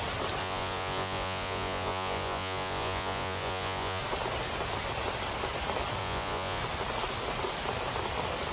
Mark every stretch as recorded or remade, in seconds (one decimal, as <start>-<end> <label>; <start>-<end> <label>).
0.0-0.4 recorded; 0.4-4.0 remade; 4.0-6.0 recorded; 6.0-6.6 remade; 6.6-8.5 recorded